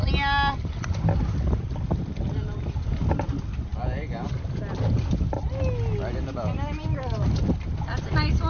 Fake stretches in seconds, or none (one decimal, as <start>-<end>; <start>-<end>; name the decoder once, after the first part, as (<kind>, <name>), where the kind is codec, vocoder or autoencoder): none